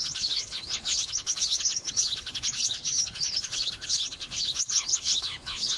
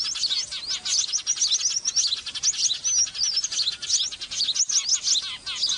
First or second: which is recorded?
second